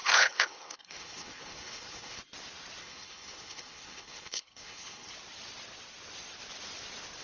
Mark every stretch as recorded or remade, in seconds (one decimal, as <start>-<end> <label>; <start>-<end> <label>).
0.0-2.2 remade; 2.2-2.8 recorded; 2.8-5.1 remade; 5.1-7.2 recorded